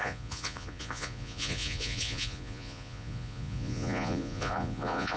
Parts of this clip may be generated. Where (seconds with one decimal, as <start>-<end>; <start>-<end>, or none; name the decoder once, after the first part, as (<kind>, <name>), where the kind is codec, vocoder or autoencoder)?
0.0-5.2 (vocoder, Vocos)